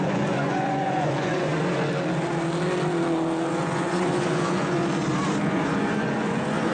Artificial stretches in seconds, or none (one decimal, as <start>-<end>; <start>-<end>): 0.0-1.5; 3.5-4.8; 5.4-6.7